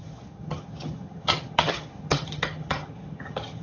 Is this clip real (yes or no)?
no